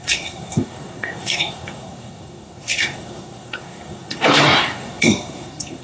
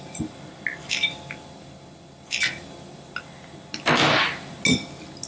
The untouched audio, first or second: second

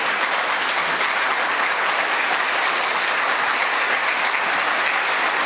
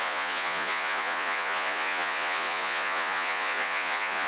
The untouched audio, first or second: first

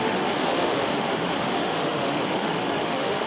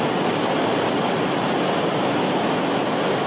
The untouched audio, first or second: second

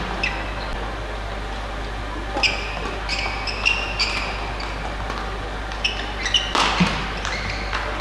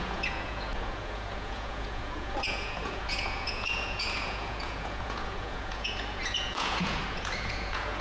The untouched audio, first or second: first